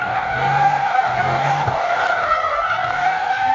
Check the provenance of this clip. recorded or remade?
remade